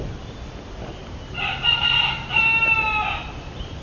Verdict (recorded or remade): recorded